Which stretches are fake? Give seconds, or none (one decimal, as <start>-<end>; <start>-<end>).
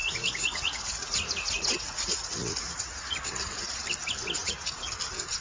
0.0-3.2; 4.4-4.9